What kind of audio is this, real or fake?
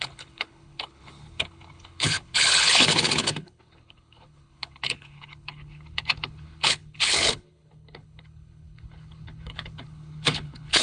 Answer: fake